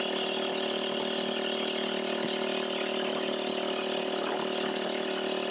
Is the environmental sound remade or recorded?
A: recorded